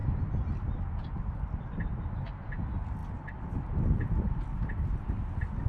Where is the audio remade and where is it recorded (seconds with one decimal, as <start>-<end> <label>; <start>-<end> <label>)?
0.0-3.0 recorded; 3.0-4.2 remade; 4.2-5.7 recorded